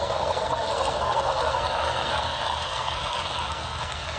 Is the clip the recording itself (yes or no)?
no